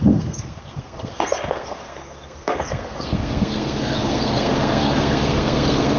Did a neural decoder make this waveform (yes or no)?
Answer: yes